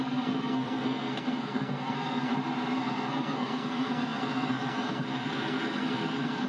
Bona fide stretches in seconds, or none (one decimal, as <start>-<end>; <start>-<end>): 2.3-2.8